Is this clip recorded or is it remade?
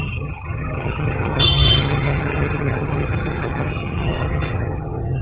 remade